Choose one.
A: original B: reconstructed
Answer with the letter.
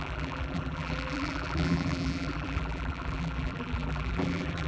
B